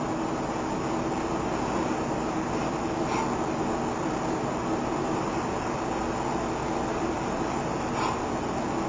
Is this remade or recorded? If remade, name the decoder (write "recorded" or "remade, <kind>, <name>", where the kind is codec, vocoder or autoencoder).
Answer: recorded